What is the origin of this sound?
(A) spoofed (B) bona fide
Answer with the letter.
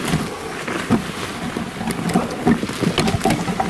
B